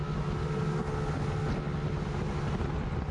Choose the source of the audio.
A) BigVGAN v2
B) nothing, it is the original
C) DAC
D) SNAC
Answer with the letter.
B